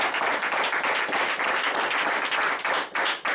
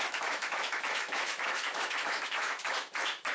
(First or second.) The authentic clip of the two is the first